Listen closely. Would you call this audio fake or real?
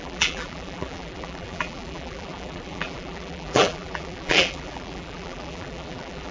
fake